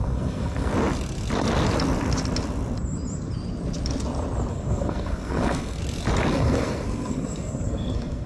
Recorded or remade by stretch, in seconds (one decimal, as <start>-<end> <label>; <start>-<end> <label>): 0.0-0.7 remade; 0.7-4.5 recorded; 4.5-5.8 remade; 5.8-6.3 recorded; 6.3-8.3 remade